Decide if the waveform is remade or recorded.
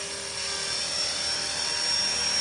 recorded